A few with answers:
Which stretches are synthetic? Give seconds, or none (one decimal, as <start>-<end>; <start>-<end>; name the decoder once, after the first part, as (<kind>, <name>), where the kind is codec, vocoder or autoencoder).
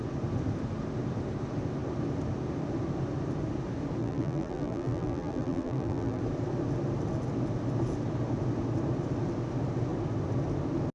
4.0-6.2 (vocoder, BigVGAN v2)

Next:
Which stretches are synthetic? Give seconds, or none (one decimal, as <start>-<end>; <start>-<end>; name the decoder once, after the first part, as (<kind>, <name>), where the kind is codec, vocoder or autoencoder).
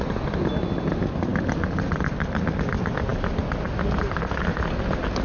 none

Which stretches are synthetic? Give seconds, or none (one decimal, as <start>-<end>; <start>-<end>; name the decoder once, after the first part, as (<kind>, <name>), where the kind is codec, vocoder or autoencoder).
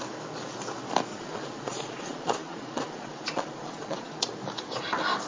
1.1-4.3 (vocoder, Vocos)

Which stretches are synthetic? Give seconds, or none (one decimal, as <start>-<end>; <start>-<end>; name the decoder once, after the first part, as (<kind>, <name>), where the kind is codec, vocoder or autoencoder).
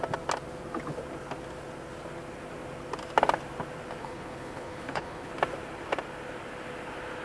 4.0-5.3 (codec, HILCodec)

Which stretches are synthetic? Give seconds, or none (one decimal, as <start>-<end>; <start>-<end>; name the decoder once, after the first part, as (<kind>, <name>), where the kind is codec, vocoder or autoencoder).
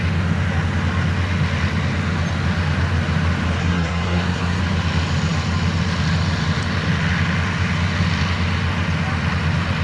3.6-4.6 (codec, SNAC)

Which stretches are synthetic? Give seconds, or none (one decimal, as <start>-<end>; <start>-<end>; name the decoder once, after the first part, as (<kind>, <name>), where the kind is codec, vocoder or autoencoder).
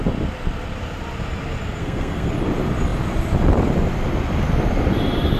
1.8-2.3 (codec, SNAC)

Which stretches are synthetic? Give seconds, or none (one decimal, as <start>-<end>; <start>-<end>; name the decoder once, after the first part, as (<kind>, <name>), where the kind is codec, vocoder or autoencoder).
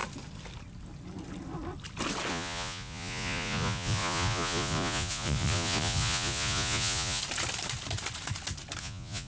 2.3-7.2 (vocoder, Vocos); 8.8-9.3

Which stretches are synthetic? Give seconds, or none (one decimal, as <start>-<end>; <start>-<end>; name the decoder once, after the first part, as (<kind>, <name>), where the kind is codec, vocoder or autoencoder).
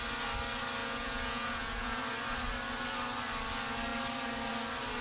0.8-2.0 (vocoder, Vocos)